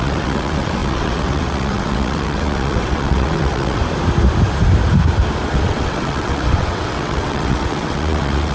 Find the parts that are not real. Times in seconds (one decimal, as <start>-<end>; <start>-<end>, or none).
0.0-3.8; 5.5-8.5